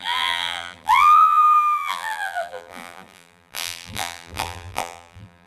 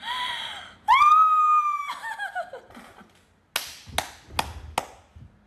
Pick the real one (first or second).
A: second